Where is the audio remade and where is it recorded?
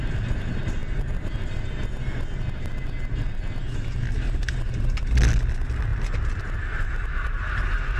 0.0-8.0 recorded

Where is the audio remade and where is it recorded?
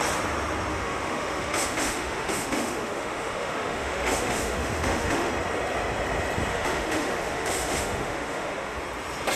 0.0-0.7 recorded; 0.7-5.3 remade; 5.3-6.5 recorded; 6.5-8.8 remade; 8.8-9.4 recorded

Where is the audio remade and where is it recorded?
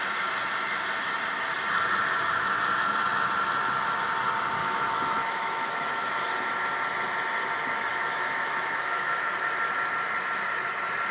0.0-4.6 recorded; 4.6-6.3 remade; 6.3-7.9 recorded; 7.9-9.3 remade; 9.3-11.1 recorded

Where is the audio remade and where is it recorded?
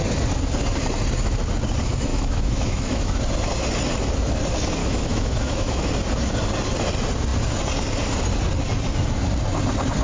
0.0-2.1 recorded; 2.1-3.2 remade; 3.2-4.8 recorded; 4.8-5.9 remade; 5.9-10.0 recorded